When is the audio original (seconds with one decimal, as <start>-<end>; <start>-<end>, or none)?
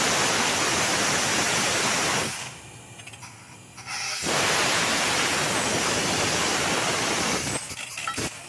0.0-8.5